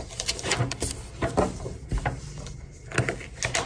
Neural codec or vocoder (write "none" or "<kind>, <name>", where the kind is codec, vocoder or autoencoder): none